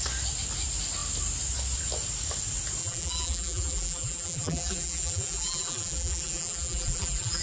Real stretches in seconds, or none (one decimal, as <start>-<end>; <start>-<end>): 0.0-2.8